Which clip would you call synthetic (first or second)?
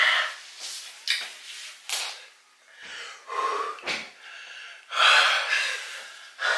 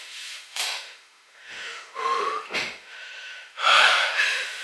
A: second